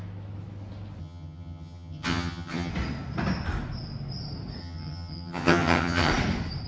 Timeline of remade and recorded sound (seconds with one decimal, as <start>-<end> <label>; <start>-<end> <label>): 0.0-1.0 recorded; 1.0-2.7 remade; 2.7-4.6 recorded; 4.6-6.1 remade; 6.1-6.7 recorded